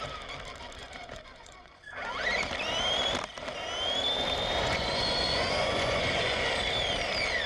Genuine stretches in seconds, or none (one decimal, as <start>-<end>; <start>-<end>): 0.0-0.8; 1.8-4.6; 6.5-7.5